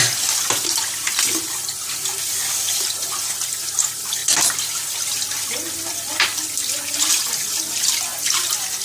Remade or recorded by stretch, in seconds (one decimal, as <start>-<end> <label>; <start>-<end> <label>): 0.0-8.8 remade